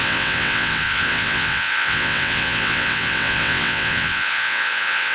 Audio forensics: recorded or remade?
remade